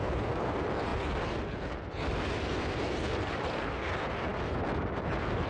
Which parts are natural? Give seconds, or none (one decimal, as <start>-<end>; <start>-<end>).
none